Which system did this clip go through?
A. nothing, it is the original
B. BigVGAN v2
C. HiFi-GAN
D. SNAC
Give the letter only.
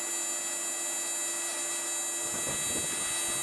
A